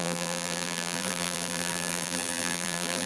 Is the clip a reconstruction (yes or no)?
yes